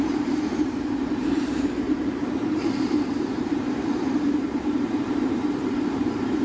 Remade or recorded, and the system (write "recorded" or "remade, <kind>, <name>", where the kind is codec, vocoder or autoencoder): remade, vocoder, BigVGAN v2